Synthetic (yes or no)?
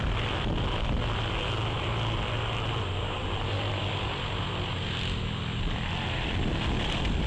no